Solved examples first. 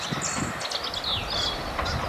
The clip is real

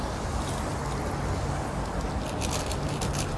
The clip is real